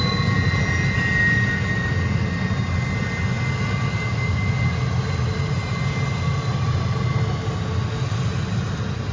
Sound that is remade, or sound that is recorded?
recorded